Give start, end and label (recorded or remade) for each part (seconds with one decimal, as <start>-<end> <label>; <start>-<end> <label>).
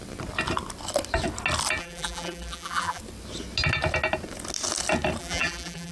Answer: 0.0-1.8 recorded; 1.8-3.0 remade; 3.0-5.2 recorded; 5.2-5.9 remade